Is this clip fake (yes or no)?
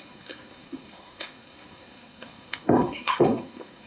yes